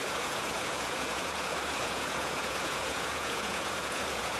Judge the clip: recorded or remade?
remade